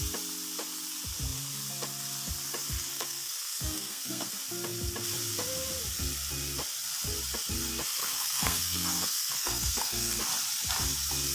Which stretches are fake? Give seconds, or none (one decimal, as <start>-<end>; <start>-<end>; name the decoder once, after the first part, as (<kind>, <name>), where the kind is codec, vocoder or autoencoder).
2.9-4.3 (codec, SNAC); 8.0-10.2